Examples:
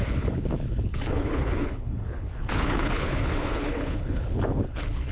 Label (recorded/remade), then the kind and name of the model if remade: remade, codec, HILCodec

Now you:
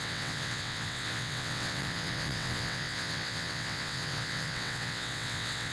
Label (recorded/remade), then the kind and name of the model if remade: remade, vocoder, WaveNeXt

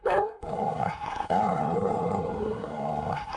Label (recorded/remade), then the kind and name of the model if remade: remade, codec, SNAC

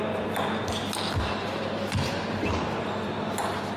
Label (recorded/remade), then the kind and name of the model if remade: recorded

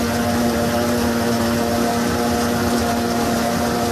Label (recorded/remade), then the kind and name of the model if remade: recorded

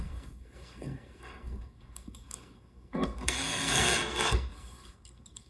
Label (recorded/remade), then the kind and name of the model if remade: remade, codec, SNAC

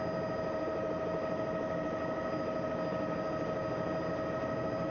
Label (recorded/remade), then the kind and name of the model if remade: recorded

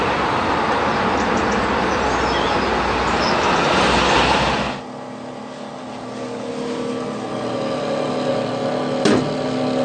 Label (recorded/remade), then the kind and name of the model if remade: recorded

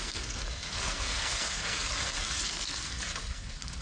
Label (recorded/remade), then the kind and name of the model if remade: remade, codec, SNAC